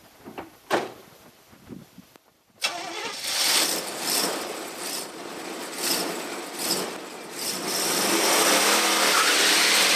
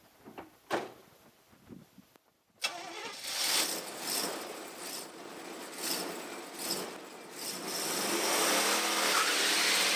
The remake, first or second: first